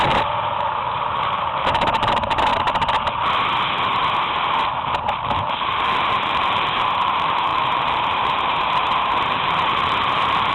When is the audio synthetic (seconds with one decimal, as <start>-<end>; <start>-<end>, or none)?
0.0-2.5; 5.5-10.5

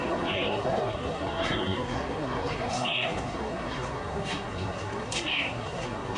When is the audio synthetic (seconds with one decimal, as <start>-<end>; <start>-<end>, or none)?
0.0-6.2

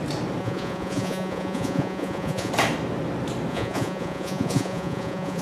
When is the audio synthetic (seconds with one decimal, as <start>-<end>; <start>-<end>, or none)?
0.4-2.5; 3.5-5.4

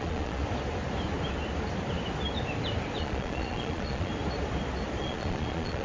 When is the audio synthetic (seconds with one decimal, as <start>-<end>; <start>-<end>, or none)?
0.0-0.4; 3.0-4.1; 5.0-5.8

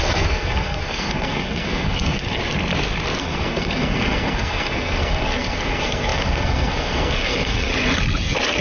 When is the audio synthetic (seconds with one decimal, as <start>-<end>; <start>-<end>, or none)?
0.0-2.4; 3.2-7.7

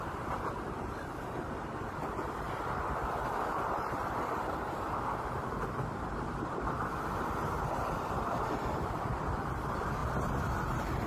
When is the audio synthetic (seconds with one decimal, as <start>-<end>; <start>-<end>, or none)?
none